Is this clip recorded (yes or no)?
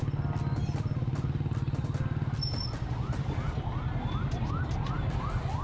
yes